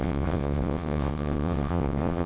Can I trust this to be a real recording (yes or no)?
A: no